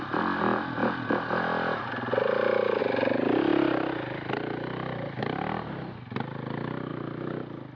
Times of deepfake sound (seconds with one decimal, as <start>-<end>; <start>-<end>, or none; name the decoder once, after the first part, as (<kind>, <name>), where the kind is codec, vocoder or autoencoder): none